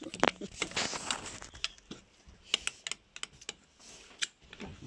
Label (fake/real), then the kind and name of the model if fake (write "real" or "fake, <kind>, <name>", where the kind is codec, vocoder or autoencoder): real